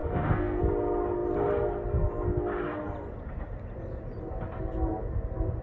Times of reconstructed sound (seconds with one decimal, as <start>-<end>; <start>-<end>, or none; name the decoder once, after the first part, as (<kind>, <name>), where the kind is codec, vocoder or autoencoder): 0.0-0.6 (codec, SNAC)